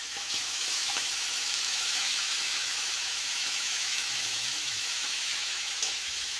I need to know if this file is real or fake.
fake